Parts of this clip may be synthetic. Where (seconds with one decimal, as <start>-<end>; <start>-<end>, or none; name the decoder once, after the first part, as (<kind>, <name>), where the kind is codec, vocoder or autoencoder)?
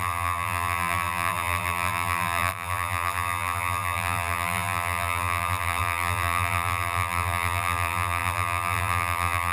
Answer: 0.0-9.5 (vocoder, BigVGAN v2)